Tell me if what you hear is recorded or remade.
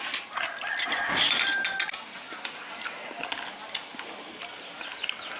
recorded